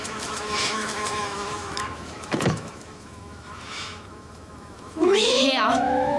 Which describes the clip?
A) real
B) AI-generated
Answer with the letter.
B